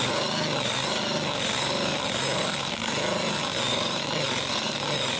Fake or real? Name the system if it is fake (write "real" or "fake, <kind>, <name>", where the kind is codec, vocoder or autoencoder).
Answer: real